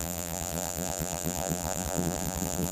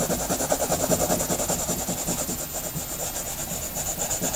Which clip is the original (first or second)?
second